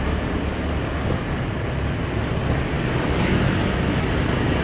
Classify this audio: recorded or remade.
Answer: recorded